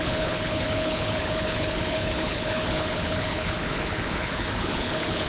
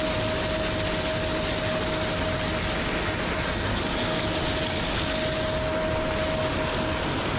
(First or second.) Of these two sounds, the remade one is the first